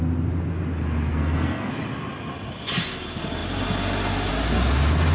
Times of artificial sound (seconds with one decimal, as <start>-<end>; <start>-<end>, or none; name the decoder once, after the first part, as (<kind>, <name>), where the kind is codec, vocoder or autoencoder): 1.1-1.7 (codec, SNAC)